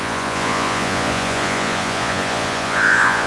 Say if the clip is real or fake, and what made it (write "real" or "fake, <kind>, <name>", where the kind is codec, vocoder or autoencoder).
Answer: fake, vocoder, Vocos